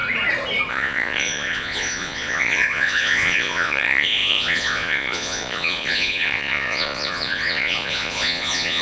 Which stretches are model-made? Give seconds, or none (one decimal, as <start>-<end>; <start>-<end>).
0.7-8.8